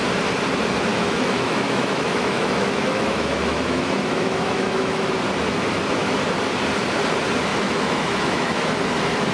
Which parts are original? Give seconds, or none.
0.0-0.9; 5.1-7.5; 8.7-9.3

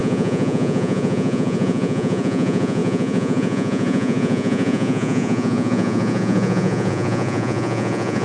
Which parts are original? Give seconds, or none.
none

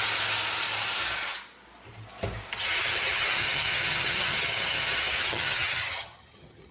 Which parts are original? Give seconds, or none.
0.0-2.6

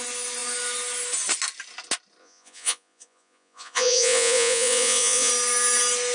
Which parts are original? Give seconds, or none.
0.0-2.2; 5.3-6.1

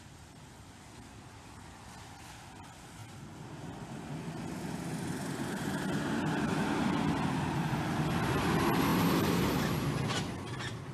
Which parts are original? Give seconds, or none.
0.0-10.9

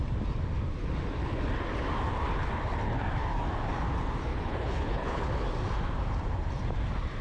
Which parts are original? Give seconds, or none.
0.0-4.3; 5.3-7.2

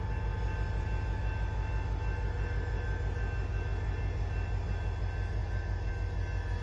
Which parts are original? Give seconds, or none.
0.0-6.6

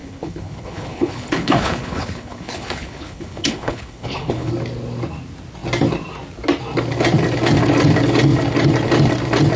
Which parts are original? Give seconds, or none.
4.5-9.6